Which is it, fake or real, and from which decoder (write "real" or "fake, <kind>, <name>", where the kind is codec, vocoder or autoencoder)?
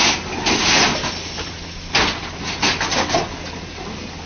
real